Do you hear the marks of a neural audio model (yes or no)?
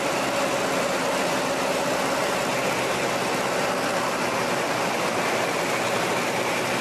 no